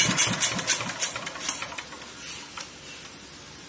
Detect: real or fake real